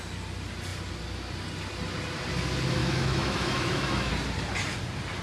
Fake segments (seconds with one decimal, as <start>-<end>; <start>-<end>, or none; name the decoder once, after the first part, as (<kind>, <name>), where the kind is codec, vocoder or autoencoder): 2.8-4.1 (autoencoder, DAC-VAE)